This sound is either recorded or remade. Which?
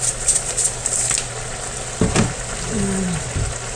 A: recorded